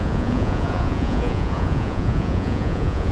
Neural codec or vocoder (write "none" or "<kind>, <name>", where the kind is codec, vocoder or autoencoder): vocoder, Vocos